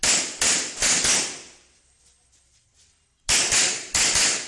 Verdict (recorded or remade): recorded